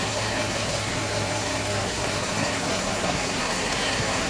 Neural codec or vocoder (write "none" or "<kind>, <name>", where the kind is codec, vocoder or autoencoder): codec, SNAC